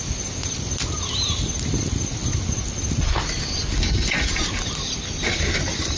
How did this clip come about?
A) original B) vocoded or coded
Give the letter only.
A